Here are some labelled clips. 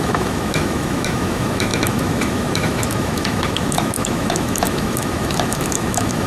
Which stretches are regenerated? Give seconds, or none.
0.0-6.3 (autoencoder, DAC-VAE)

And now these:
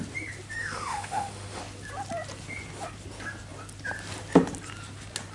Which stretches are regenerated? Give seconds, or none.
0.6-1.6 (autoencoder, DAC-VAE)

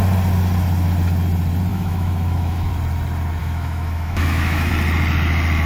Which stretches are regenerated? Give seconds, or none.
1.7-2.7 (autoencoder, DAC-VAE); 3.4-4.7

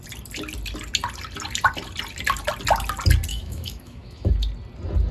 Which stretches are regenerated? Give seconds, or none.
3.3-4.3 (autoencoder, DAC-VAE)

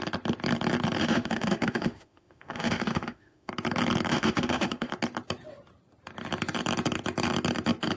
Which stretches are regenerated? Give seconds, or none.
1.0-3.5 (autoencoder, DAC-VAE); 4.1-4.9